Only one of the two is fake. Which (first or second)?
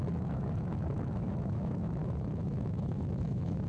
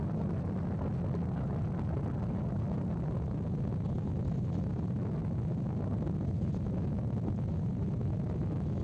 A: first